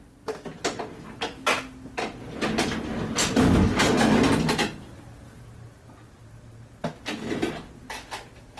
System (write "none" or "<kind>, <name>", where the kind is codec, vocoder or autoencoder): none